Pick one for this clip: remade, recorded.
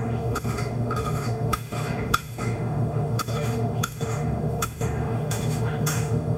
remade